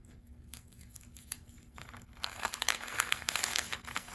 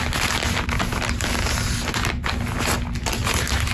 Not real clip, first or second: first